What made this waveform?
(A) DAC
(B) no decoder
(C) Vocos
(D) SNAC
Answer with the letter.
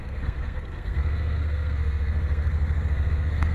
D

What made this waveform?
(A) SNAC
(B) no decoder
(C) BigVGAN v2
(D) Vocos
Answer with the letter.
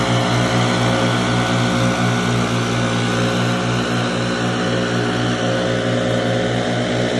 B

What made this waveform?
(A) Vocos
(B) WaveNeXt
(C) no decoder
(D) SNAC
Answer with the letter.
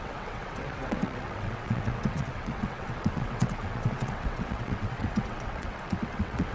B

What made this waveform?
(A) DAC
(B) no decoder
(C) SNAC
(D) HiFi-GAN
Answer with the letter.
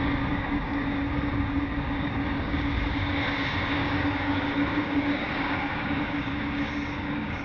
A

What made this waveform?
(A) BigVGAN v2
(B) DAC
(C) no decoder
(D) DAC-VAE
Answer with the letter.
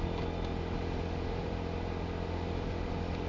C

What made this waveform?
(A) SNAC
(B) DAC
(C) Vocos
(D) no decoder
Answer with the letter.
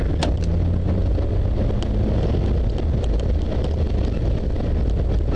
D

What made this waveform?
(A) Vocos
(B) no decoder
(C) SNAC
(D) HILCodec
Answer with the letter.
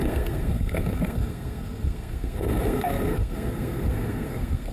C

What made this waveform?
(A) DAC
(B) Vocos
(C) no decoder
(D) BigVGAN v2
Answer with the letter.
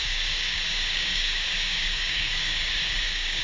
A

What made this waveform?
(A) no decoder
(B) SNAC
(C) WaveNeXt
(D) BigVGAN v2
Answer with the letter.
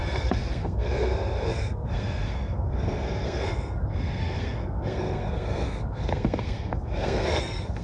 B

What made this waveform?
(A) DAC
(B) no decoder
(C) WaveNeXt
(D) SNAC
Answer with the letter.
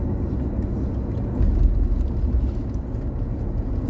B